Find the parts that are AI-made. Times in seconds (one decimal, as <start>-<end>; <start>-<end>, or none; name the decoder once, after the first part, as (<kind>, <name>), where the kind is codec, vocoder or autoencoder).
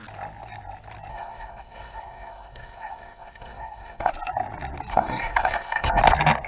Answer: 1.1-4.1 (codec, SNAC); 4.9-6.0